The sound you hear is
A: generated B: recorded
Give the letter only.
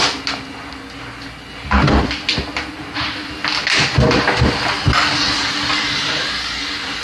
B